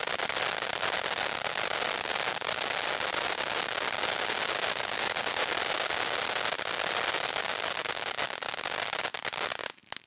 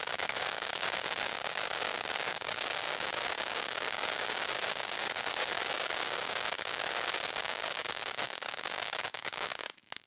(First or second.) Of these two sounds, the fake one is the second